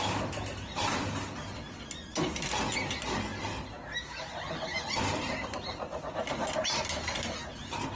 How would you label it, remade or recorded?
recorded